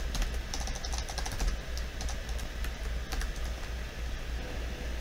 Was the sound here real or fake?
real